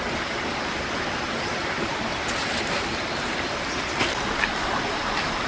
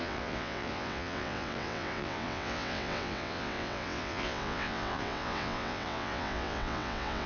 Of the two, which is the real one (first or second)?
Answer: first